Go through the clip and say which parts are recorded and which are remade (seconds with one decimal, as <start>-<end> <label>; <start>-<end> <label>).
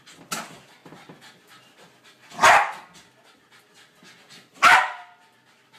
0.0-4.5 recorded; 4.5-5.8 remade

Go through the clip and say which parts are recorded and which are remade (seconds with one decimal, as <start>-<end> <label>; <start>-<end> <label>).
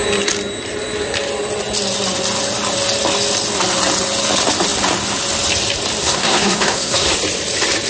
0.0-6.0 recorded; 6.0-7.1 remade; 7.1-7.9 recorded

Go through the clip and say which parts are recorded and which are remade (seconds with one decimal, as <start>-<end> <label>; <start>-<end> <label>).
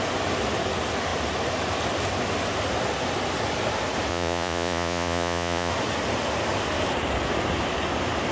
0.0-4.1 recorded; 4.1-5.7 remade; 5.7-8.3 recorded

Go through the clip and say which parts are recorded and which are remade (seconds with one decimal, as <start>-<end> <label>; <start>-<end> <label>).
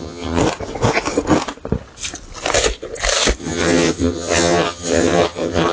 0.0-0.4 remade; 0.4-3.4 recorded; 3.4-5.7 remade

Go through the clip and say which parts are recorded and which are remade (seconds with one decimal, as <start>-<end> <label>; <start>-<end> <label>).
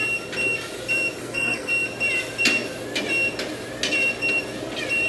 0.0-1.2 recorded; 1.2-1.7 remade; 1.7-5.1 recorded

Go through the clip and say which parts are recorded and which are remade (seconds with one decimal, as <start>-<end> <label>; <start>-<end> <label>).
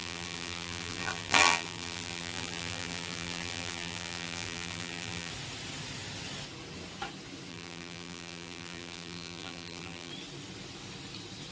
0.0-5.3 remade; 5.3-7.5 recorded; 7.5-10.1 remade; 10.1-11.5 recorded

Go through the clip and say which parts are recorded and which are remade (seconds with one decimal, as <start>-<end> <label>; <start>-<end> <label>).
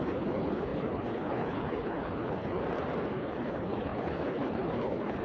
0.0-2.6 remade; 2.6-3.1 recorded; 3.1-5.2 remade